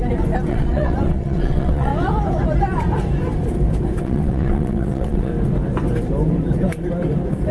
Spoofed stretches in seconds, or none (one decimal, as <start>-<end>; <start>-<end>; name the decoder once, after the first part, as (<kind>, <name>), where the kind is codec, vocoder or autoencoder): 0.5-1.9 (vocoder, WaveNeXt); 4.0-5.3